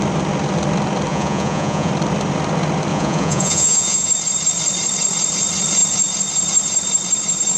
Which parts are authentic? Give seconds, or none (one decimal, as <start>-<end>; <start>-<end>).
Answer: 0.0-1.1; 1.9-2.9; 4.1-7.6